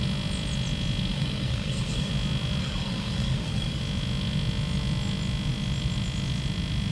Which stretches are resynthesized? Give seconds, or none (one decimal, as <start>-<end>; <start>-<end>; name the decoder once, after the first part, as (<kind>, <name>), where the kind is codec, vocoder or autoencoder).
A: 1.1-2.1 (codec, SNAC); 2.6-3.8